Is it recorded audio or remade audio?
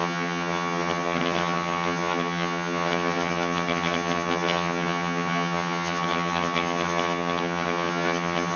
remade